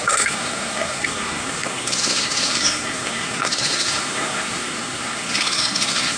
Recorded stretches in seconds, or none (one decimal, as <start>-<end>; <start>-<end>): none

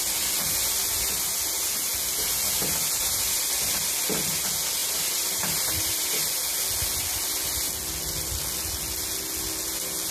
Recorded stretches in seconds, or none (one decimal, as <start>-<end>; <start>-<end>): 0.0-4.8; 5.9-10.1

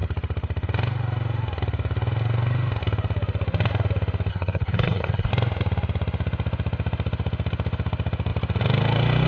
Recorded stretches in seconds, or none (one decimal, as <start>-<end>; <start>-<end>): 0.0-4.3; 5.3-9.3